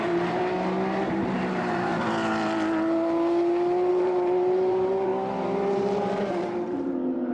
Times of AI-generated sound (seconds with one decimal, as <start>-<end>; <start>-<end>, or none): 0.0-0.4; 1.5-1.9; 3.9-5.1; 5.7-7.3